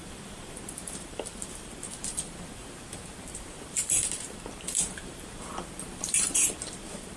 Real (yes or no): no